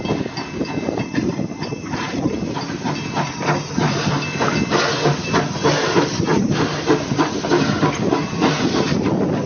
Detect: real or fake real